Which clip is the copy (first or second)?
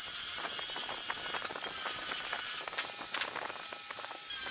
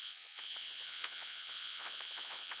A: second